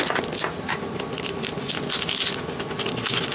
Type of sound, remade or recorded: recorded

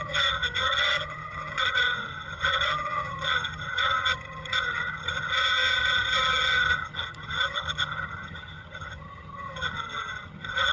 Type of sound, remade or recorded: remade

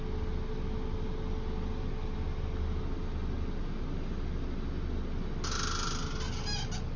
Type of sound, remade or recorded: recorded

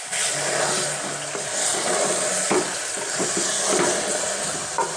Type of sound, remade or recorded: remade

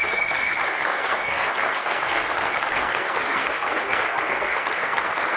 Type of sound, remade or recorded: remade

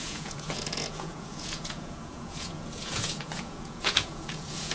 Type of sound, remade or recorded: remade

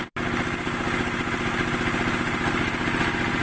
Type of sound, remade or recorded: recorded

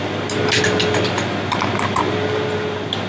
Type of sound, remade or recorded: recorded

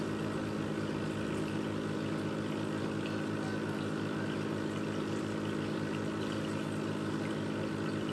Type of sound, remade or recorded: recorded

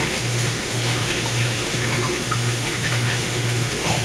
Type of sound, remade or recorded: remade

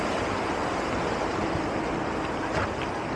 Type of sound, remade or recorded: recorded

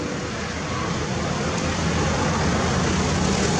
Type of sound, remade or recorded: recorded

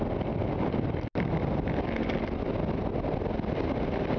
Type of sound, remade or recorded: recorded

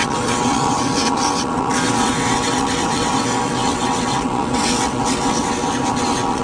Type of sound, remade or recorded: remade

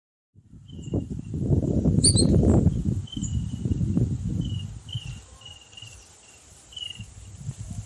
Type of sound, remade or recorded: recorded